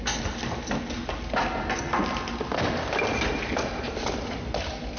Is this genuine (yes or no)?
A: yes